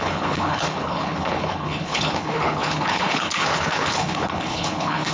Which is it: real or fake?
fake